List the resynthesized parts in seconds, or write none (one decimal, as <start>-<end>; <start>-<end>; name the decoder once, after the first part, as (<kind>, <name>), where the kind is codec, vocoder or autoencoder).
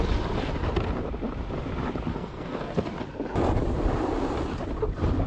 2.1-2.9 (codec, SNAC)